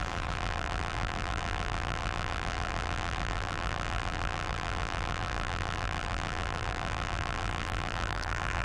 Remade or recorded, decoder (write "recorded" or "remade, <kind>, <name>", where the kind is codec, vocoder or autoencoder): remade, vocoder, BigVGAN v2